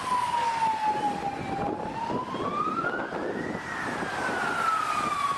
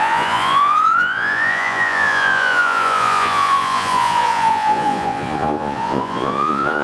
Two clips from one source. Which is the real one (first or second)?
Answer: first